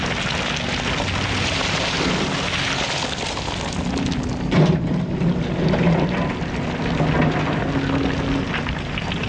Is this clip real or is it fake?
real